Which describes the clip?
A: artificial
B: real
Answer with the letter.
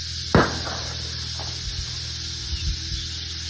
B